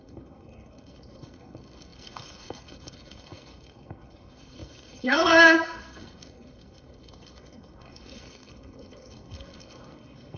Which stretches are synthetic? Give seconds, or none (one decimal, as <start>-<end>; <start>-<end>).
0.0-10.4